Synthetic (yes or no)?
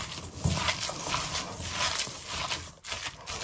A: no